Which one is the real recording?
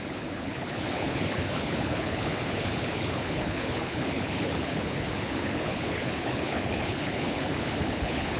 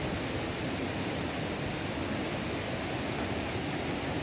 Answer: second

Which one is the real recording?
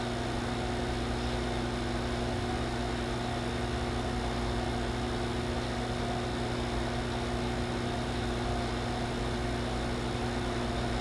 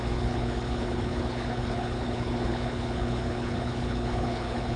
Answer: first